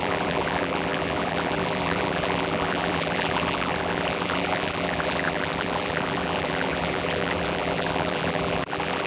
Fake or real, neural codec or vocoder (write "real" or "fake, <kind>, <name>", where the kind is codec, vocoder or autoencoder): fake, vocoder, BigVGAN v2